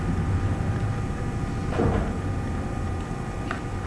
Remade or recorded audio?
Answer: remade